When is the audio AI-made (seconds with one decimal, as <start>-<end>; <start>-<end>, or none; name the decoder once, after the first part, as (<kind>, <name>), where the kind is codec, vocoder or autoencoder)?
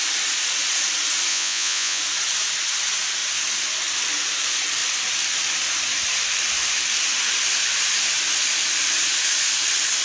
1.3-2.0 (vocoder, Vocos)